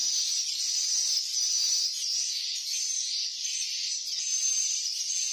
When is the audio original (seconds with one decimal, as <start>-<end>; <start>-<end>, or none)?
0.0-5.3